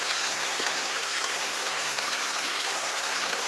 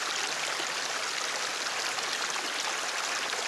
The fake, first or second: first